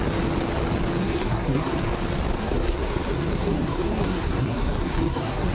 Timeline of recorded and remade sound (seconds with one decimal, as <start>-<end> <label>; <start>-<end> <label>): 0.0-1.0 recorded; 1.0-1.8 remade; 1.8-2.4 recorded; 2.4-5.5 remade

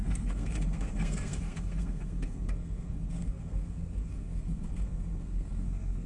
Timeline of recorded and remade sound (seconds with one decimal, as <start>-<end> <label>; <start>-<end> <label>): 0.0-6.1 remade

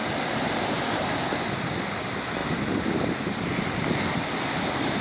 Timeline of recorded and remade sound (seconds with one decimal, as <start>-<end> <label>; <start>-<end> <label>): 0.0-5.0 recorded

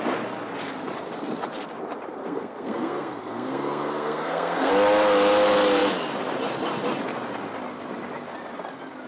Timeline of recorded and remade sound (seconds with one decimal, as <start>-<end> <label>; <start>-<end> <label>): 0.0-2.2 recorded; 2.2-4.7 remade; 4.7-9.1 recorded